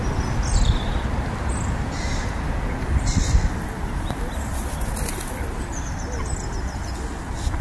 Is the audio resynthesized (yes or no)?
no